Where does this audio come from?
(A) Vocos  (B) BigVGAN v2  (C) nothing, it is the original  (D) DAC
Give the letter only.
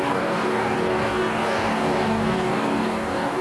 D